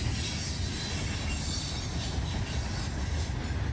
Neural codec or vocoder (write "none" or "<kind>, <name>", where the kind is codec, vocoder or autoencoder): none